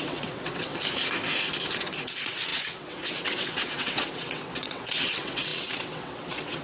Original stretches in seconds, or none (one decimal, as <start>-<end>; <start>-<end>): 0.7-1.9

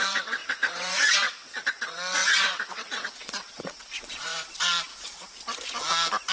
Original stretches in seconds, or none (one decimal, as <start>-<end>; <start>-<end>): 4.9-6.3

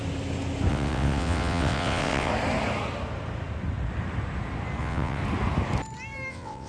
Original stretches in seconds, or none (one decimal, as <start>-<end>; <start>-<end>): 0.0-0.7; 2.3-4.8; 5.2-6.3

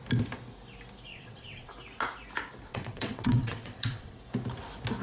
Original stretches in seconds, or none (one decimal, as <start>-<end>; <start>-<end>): 0.0-1.1; 1.7-2.7; 4.2-5.0

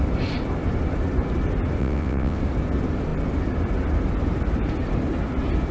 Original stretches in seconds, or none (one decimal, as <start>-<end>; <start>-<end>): 0.0-1.8; 2.4-5.7

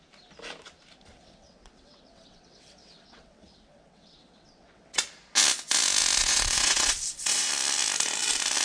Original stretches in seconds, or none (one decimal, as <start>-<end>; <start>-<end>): 0.0-1.1; 5.0-6.2; 7.5-8.6

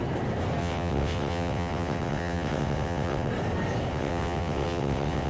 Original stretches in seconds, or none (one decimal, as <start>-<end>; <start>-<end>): 0.0-0.6; 3.3-3.9